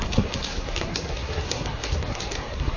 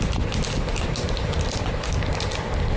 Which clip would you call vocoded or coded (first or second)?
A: first